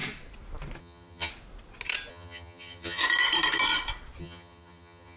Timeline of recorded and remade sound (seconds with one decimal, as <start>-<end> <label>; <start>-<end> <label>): 0.0-0.8 recorded; 0.8-1.3 remade; 1.3-2.1 recorded; 2.1-3.0 remade; 3.0-4.2 recorded; 4.2-5.2 remade